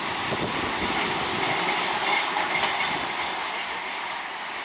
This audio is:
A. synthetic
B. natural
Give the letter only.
B